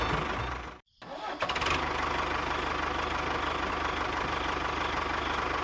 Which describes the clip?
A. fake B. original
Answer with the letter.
B